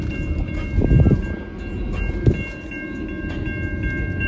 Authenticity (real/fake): real